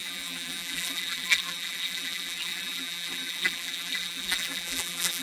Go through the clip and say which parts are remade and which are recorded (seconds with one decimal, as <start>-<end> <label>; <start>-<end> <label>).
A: 0.0-5.2 remade